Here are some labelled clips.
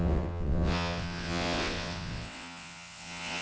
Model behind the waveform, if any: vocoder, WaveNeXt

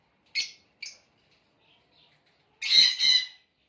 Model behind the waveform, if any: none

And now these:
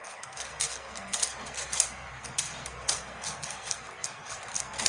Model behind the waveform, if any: codec, SNAC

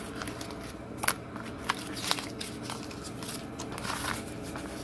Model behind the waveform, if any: none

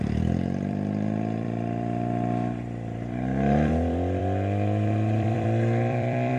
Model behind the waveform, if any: vocoder, BigVGAN v2